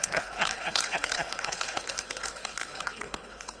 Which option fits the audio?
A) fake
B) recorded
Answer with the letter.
A